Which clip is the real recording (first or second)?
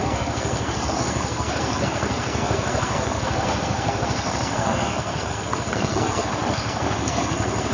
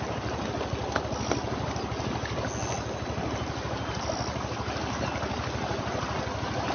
second